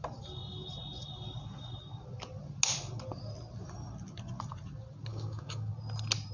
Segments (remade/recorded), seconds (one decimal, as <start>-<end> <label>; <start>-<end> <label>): 0.0-5.1 recorded; 5.1-5.7 remade; 5.7-6.3 recorded